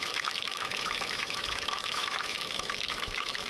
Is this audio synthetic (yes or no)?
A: yes